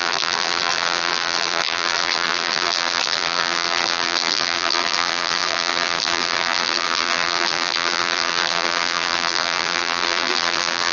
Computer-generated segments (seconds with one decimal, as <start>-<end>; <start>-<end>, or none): 0.0-10.9